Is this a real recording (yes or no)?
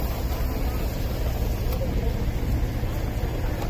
yes